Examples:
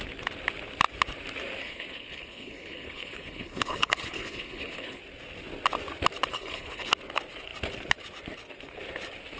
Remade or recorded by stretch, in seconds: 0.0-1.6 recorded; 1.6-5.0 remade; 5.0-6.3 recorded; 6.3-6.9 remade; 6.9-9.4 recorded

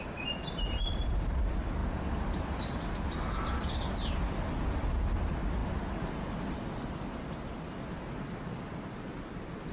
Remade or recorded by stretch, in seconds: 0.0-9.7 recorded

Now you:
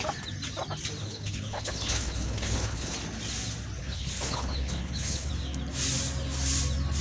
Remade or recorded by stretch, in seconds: 0.0-1.0 recorded; 1.0-2.9 remade; 2.9-3.8 recorded; 3.8-5.3 remade; 5.3-7.0 recorded

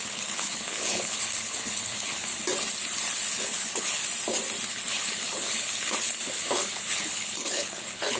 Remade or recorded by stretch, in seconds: 0.0-2.3 remade; 2.3-3.4 recorded; 3.4-4.0 remade; 4.0-4.7 recorded; 4.7-8.2 remade